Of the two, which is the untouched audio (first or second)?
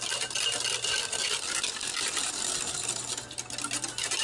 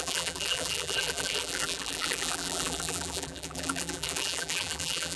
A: first